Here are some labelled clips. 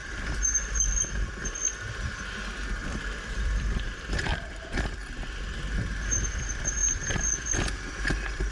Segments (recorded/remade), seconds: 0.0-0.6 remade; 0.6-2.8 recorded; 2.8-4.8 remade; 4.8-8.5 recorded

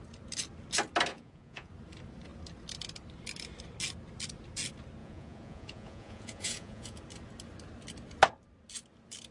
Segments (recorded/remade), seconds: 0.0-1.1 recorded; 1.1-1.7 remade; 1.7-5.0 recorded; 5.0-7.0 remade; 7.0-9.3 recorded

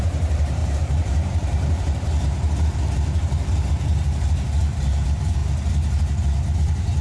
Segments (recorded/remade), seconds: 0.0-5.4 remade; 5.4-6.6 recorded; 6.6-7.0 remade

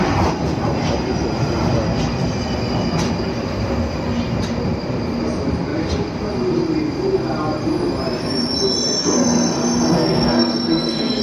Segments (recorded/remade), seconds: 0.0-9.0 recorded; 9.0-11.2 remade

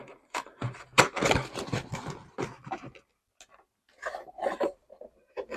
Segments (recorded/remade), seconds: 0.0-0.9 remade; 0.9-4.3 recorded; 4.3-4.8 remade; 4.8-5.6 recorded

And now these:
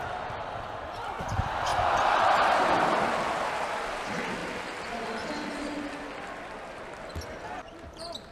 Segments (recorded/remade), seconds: 0.0-1.7 recorded; 1.7-2.6 remade; 2.6-8.3 recorded